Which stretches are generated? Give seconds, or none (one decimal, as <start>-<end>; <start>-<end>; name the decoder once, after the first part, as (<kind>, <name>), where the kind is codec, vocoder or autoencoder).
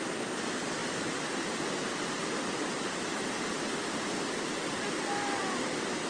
none